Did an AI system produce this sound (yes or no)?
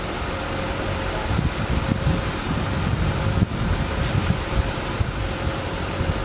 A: yes